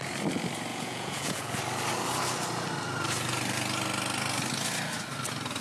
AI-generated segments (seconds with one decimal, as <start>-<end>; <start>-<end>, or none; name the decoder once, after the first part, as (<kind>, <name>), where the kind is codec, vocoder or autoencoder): 0.7-1.6 (vocoder, Vocos)